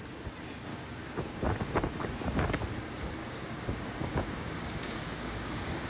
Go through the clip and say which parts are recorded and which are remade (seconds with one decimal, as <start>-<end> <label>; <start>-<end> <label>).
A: 0.0-0.7 recorded; 0.7-1.4 remade; 1.4-3.2 recorded; 3.2-5.9 remade